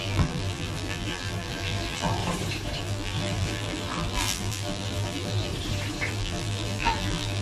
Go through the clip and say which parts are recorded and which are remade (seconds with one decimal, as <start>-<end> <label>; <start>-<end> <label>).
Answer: 0.0-2.2 remade; 2.2-2.8 recorded; 2.8-5.5 remade; 5.5-6.1 recorded; 6.1-7.4 remade